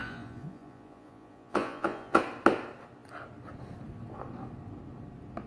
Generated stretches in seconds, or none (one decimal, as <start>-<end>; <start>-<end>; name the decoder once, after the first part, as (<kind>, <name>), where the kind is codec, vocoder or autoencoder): 0.0-2.2 (vocoder, Vocos)